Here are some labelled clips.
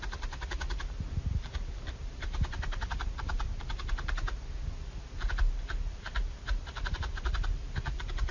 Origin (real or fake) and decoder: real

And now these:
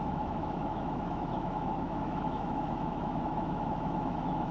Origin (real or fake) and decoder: fake, autoencoder, DAC-VAE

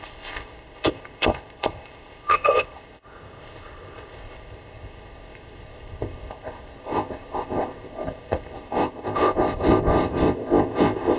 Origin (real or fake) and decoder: fake, codec, ZipCodec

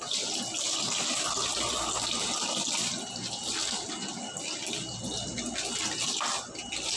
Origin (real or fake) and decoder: real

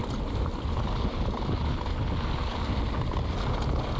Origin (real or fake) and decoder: real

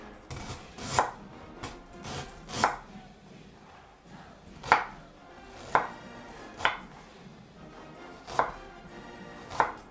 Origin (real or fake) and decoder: real